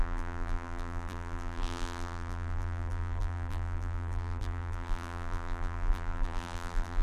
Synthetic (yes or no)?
yes